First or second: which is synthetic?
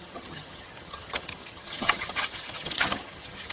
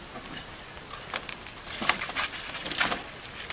first